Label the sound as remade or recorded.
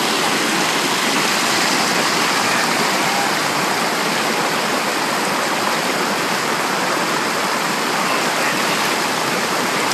recorded